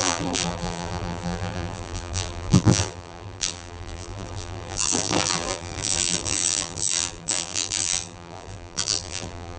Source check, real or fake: fake